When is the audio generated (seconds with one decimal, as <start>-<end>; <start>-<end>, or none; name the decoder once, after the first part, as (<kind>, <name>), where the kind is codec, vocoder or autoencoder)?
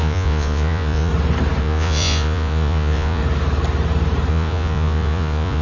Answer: 0.0-1.1 (vocoder, Vocos); 1.6-3.2; 4.3-5.6